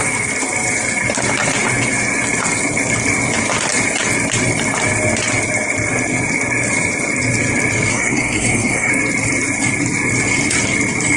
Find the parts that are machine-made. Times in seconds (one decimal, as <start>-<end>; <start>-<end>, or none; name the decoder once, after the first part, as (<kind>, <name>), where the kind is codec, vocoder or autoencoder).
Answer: 7.9-8.9 (codec, SNAC)